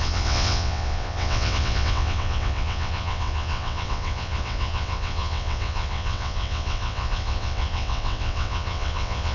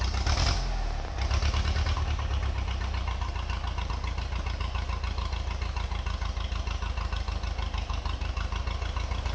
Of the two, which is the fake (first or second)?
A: first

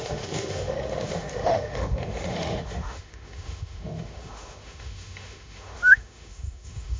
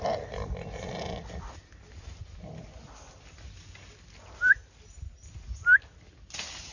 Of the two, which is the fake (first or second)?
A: first